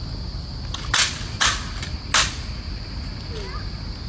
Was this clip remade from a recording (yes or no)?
no